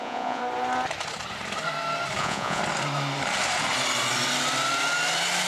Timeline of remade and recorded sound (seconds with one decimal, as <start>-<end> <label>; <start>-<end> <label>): 0.0-0.4 remade; 0.4-2.2 recorded; 2.2-2.6 remade; 2.6-5.5 recorded